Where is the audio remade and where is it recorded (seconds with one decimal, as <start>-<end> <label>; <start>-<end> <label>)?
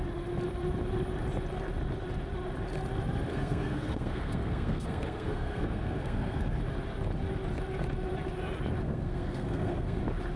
0.0-3.3 recorded; 3.3-6.6 remade; 6.6-8.8 recorded; 8.8-10.0 remade; 10.0-10.4 recorded